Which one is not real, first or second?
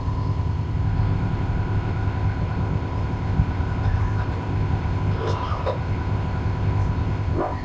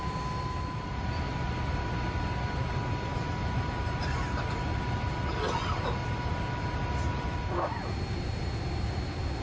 first